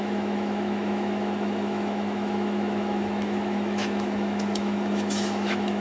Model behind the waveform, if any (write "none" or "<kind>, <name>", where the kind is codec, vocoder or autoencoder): autoencoder, DAC-VAE